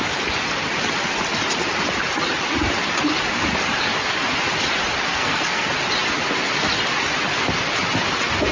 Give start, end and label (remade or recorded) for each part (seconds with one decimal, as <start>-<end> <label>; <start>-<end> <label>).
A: 0.0-5.1 recorded; 5.1-5.7 remade; 5.7-8.5 recorded